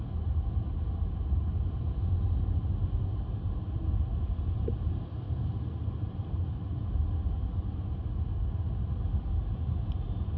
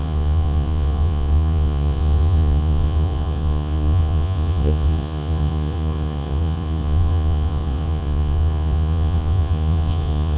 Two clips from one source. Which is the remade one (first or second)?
second